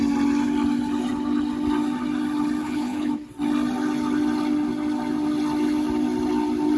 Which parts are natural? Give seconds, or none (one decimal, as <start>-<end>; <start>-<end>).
0.0-2.6; 3.1-6.8